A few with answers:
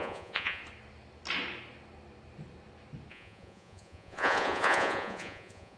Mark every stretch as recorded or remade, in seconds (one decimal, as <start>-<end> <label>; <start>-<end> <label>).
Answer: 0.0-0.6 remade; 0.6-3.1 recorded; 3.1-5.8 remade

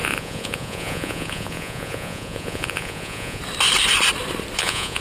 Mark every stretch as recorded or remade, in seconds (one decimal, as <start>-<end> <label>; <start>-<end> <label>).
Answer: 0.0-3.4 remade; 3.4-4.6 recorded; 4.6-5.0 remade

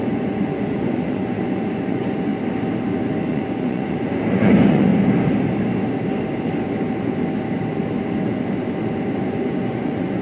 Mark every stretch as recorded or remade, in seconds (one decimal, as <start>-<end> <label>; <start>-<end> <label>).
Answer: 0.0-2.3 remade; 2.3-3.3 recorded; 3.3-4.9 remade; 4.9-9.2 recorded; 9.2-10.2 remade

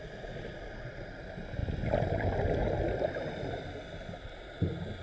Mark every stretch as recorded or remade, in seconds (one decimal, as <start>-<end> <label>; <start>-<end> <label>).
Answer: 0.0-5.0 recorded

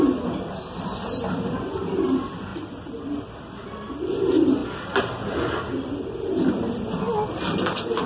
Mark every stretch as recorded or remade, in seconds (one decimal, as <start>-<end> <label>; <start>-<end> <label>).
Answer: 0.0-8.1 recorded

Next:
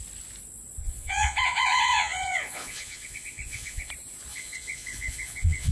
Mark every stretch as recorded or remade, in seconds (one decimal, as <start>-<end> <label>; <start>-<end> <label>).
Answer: 0.0-0.8 recorded; 0.8-3.9 remade; 3.9-4.3 recorded; 4.3-5.7 remade

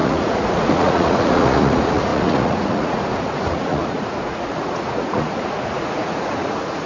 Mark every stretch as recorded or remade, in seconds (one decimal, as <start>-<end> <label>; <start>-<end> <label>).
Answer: 0.0-6.9 remade

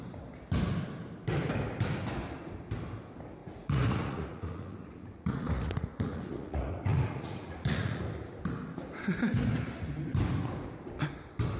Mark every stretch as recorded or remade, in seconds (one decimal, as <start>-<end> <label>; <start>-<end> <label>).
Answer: 0.0-3.4 recorded; 3.4-8.0 remade; 8.0-11.6 recorded